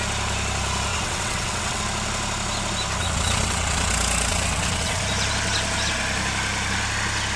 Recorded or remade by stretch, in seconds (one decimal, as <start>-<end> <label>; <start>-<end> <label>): 0.0-0.9 recorded; 0.9-1.8 remade; 1.8-3.0 recorded; 3.0-3.9 remade; 3.9-4.3 recorded; 4.3-5.0 remade; 5.0-7.4 recorded